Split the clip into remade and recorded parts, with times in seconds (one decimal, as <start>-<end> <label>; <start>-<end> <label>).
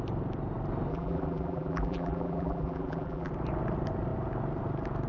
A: 0.0-0.9 recorded; 0.9-3.3 remade; 3.3-5.1 recorded